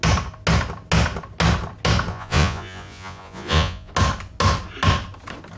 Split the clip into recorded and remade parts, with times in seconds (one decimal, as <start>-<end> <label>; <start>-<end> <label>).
0.0-2.1 recorded; 2.1-3.9 remade; 3.9-5.6 recorded